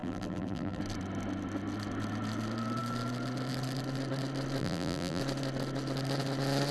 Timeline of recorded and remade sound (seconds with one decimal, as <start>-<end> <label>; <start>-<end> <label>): 0.0-0.8 remade; 0.8-4.6 recorded; 4.6-5.2 remade; 5.2-6.7 recorded